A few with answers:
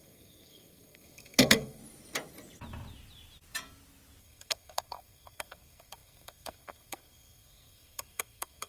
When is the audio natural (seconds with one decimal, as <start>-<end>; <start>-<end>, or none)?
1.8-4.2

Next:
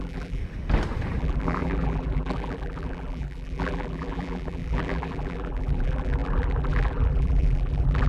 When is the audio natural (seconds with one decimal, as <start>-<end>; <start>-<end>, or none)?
0.4-1.2

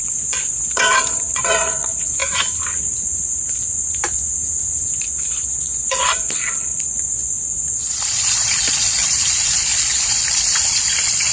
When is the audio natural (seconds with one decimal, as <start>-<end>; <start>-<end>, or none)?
2.2-4.8